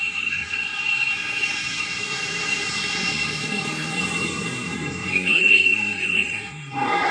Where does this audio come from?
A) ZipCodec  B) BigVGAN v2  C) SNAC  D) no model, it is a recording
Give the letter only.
C